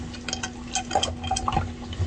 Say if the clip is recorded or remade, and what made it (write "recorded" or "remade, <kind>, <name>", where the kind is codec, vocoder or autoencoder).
recorded